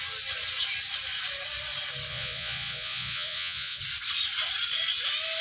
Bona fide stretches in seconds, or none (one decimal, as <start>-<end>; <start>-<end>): 0.0-2.1; 3.8-5.4